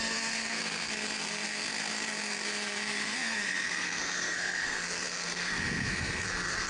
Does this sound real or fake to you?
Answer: fake